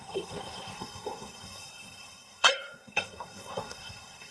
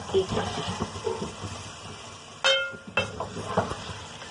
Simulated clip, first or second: first